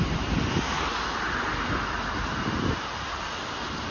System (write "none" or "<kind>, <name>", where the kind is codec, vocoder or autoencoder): none